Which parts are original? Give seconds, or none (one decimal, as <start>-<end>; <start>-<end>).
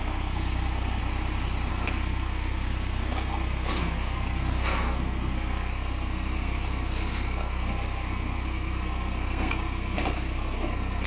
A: 1.0-1.7